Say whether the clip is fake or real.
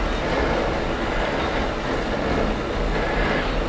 real